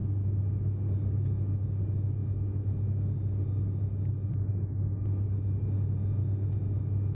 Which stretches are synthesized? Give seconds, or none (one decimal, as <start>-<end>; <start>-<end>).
none